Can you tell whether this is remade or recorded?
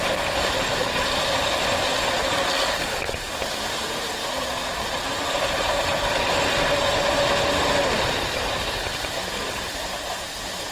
recorded